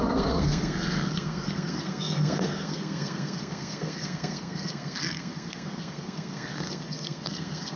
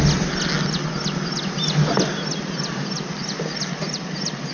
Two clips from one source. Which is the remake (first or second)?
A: first